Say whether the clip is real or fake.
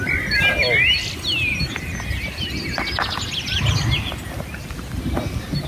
real